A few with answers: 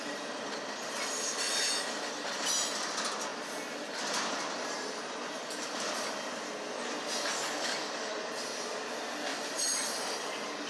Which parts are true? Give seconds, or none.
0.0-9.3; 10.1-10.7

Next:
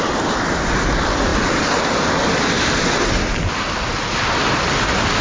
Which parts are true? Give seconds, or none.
0.0-5.2

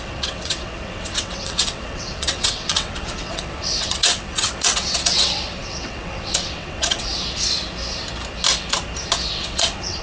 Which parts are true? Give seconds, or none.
7.1-9.3

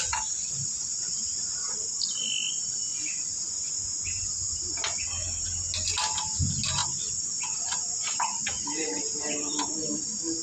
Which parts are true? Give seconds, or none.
0.0-2.9; 4.6-10.4

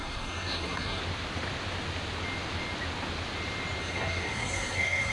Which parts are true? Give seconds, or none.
1.0-3.8

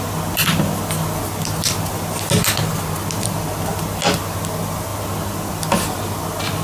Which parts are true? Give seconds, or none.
0.0-6.6

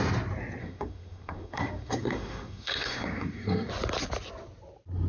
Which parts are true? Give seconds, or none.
0.0-0.6; 3.7-5.1

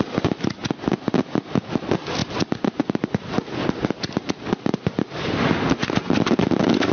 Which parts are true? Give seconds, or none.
0.0-6.9